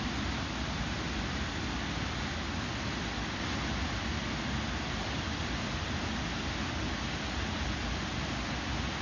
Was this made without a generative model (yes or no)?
yes